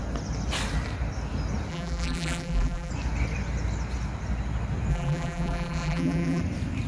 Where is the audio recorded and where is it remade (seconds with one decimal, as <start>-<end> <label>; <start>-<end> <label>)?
0.0-1.7 recorded; 1.7-2.9 remade; 2.9-4.9 recorded; 4.9-6.4 remade; 6.4-6.9 recorded